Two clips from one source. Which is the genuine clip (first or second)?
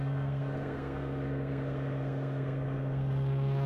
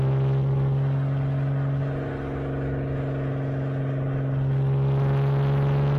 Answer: second